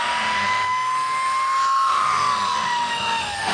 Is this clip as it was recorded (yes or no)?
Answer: no